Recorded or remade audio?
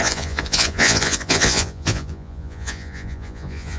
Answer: remade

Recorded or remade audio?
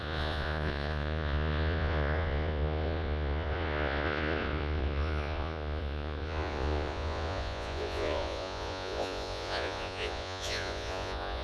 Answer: remade